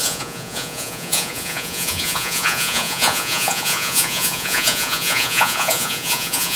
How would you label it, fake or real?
fake